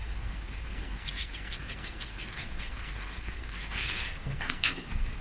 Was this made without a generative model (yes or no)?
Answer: no